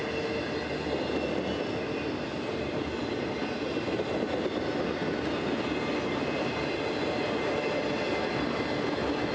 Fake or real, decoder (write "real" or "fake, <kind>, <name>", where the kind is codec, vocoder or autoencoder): real